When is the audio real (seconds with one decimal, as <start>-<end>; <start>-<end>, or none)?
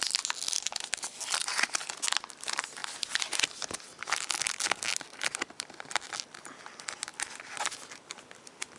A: 0.0-8.8